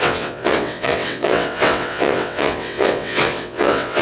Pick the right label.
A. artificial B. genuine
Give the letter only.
A